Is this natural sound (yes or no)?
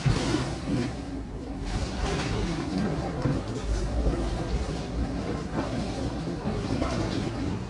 no